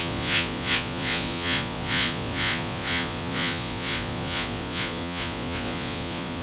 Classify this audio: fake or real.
fake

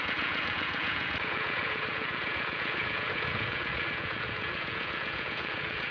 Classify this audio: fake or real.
fake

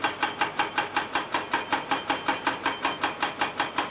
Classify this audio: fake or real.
real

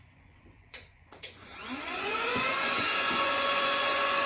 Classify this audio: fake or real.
fake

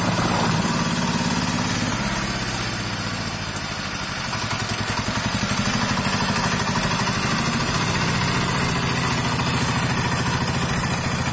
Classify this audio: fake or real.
real